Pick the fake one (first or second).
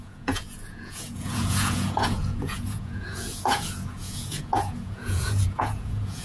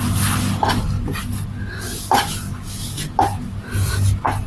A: first